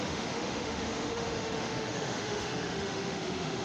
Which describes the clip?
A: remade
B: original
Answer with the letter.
A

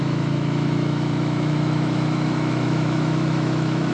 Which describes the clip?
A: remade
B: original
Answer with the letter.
A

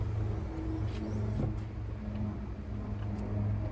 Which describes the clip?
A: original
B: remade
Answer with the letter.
A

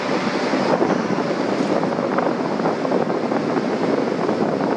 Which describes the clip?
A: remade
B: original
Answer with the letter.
B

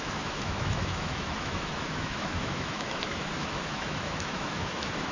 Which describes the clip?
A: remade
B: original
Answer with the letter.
A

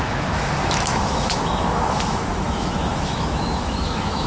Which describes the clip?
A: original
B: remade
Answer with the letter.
B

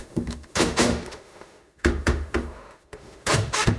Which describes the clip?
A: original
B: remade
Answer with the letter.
B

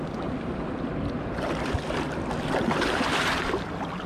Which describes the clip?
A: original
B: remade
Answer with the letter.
A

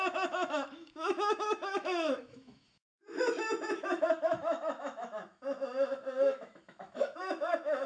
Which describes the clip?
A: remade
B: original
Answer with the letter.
A